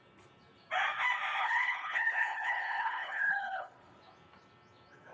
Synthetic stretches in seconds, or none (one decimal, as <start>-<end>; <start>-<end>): 1.4-4.0